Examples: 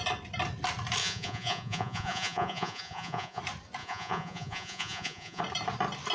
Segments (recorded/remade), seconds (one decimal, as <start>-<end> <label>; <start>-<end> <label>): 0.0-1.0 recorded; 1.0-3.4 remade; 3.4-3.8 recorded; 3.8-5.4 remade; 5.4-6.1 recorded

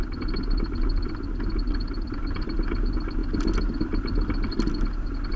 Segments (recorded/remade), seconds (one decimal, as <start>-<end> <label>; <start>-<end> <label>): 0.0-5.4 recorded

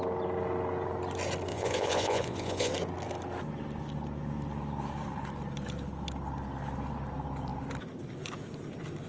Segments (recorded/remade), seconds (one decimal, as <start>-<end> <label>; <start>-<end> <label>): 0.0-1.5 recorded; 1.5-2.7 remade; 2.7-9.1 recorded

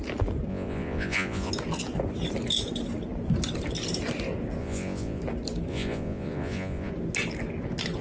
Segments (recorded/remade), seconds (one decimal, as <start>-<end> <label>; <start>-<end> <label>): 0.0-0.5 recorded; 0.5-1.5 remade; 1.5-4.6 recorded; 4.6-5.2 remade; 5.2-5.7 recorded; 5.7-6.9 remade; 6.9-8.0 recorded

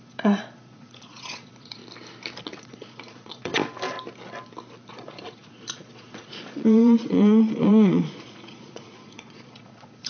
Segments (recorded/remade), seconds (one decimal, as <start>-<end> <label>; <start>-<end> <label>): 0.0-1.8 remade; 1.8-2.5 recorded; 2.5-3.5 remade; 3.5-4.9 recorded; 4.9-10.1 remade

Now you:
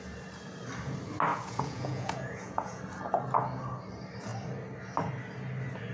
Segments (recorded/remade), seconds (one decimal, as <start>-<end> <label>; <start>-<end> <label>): 0.0-1.3 recorded; 1.3-2.8 remade; 2.8-5.9 recorded